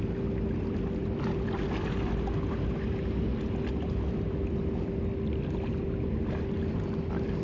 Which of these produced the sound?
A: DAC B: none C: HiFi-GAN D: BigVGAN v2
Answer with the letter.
B